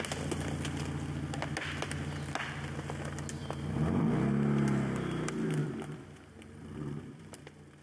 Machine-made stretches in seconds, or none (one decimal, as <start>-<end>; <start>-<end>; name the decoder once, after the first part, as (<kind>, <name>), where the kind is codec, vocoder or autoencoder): 3.4-4.1 (vocoder, BigVGAN v2); 5.6-7.2